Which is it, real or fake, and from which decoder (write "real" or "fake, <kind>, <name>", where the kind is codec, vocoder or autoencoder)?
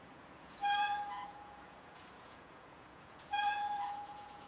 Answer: fake, vocoder, Vocos